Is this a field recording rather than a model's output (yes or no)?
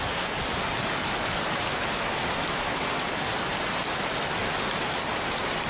yes